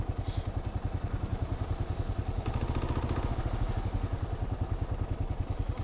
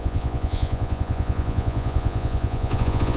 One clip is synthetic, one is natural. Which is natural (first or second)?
first